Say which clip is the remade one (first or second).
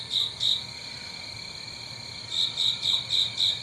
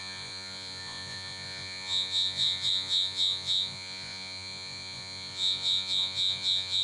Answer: second